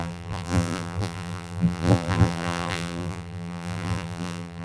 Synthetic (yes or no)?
yes